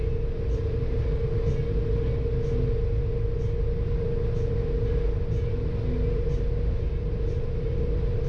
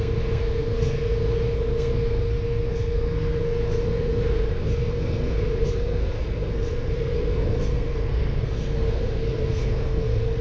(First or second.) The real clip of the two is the first